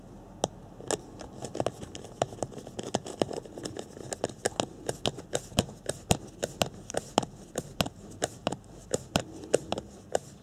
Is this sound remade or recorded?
recorded